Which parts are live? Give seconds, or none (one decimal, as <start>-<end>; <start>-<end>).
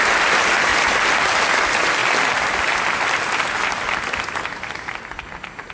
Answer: 0.0-5.7